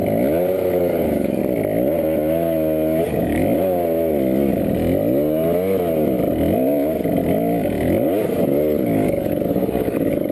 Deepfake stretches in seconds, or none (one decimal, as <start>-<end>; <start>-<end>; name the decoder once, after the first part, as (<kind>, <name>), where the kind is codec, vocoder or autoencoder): 0.7-1.4 (codec, DAC); 3.0-3.4; 8.2-10.3